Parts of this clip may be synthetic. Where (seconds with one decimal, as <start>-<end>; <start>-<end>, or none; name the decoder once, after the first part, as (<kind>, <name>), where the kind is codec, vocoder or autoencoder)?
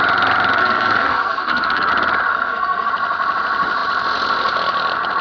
0.6-1.9 (codec, SNAC); 2.3-2.9